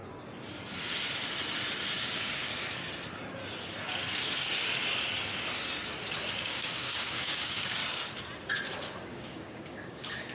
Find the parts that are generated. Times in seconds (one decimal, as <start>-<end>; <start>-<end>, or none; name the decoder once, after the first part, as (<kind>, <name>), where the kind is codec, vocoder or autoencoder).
2.0-2.5 (codec, DAC); 6.3-7.8; 9.1-10.3